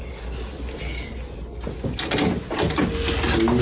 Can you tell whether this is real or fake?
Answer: real